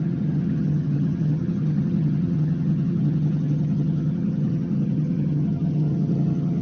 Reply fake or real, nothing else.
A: fake